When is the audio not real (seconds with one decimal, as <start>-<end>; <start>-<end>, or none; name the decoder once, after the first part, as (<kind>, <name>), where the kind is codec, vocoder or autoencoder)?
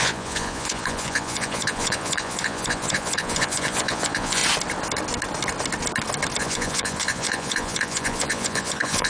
0.0-4.4 (vocoder, Vocos); 6.4-9.1